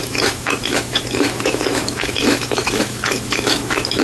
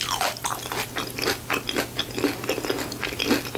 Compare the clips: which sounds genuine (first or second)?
second